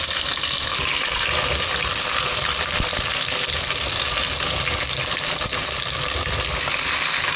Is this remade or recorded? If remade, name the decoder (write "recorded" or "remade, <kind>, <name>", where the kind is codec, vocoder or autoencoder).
recorded